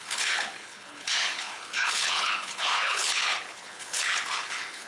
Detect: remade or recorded remade